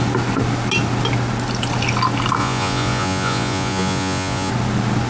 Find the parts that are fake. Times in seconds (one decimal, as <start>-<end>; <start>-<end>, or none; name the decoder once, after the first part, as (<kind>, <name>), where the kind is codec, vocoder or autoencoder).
2.4-4.5 (vocoder, Vocos)